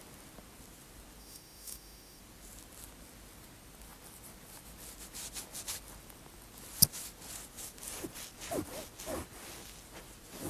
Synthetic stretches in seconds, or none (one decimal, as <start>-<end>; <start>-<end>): 1.2-2.2

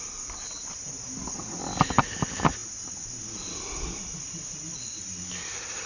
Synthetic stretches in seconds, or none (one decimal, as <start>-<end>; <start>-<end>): none

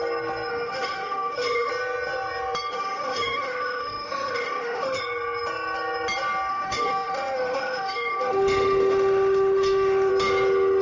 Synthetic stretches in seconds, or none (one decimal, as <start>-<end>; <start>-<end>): 0.5-1.7; 2.7-5.0; 6.5-10.1

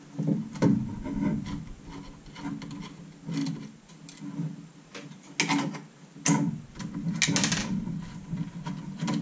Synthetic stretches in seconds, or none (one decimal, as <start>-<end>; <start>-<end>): 3.4-3.9; 4.7-5.3

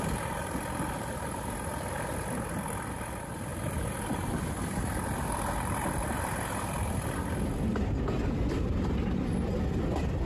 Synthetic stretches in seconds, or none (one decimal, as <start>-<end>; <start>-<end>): none

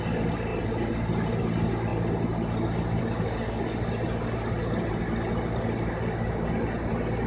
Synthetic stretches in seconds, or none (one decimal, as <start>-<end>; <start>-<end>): none

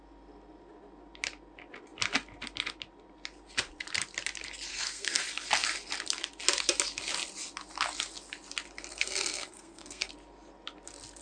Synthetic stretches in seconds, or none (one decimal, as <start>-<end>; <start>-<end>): 4.7-5.2; 8.9-10.1